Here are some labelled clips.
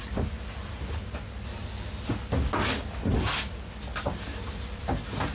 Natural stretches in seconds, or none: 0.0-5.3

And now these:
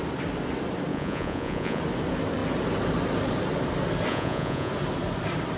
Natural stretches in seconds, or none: 0.0-0.9; 1.8-4.1; 4.7-5.6

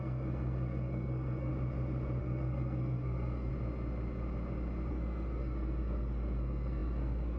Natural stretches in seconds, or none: 1.5-2.2; 3.5-4.9

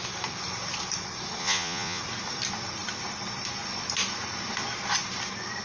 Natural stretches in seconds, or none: 0.0-1.4; 2.0-5.6

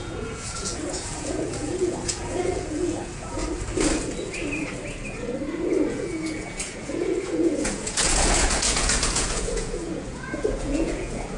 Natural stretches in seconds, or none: 3.4-5.9

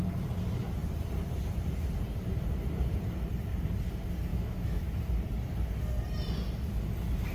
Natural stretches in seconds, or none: 0.0-4.3; 4.9-7.3

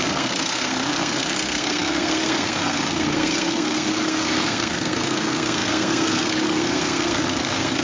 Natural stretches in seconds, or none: none